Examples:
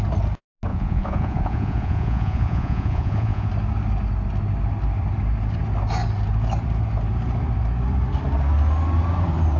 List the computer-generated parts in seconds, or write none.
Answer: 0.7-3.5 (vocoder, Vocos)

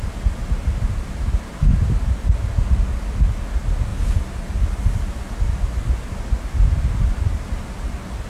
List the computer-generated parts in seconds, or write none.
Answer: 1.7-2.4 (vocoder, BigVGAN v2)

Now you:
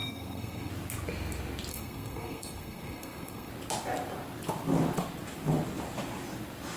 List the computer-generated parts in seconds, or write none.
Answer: 0.0-0.7 (codec, SNAC); 1.7-3.5